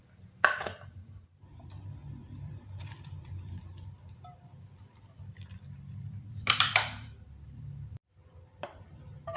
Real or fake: fake